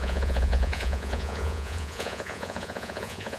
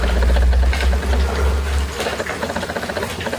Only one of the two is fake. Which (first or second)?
first